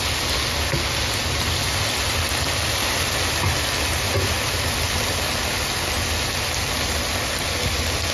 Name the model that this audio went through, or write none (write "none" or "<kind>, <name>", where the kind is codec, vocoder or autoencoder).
none